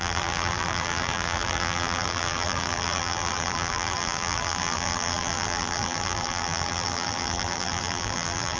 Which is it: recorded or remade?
remade